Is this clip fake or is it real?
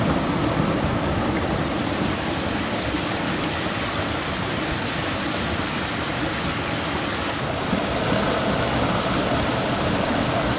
real